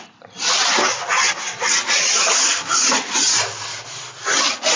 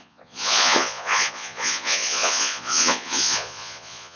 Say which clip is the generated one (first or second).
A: second